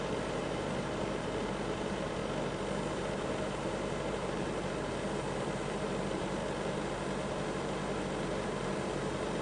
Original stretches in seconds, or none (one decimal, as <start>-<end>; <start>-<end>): 2.2-2.9